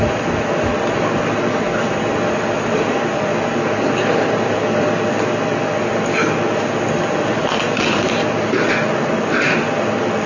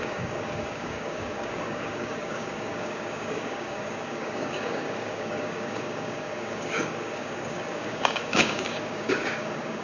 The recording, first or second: first